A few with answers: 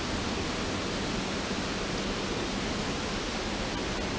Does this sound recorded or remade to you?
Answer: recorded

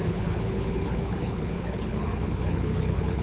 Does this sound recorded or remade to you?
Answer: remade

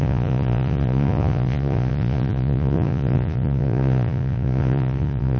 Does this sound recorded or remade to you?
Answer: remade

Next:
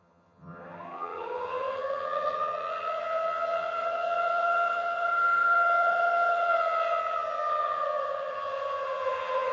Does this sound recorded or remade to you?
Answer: remade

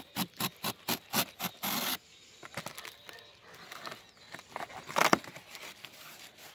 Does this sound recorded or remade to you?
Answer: recorded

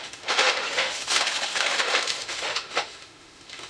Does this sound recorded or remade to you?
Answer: remade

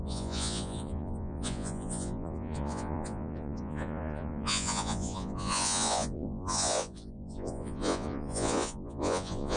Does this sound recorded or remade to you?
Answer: remade